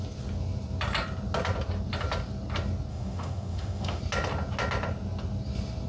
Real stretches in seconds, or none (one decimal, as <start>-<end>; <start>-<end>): 0.0-2.9; 4.0-5.9